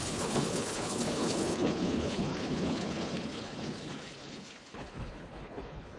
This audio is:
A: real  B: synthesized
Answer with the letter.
B